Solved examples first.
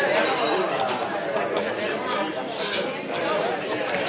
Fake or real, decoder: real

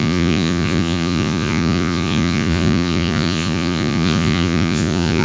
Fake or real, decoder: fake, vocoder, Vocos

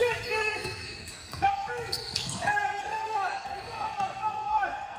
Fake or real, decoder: fake, codec, SNAC